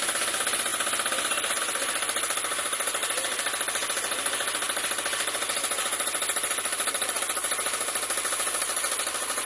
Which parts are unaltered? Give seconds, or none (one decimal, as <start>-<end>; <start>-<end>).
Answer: 0.0-9.4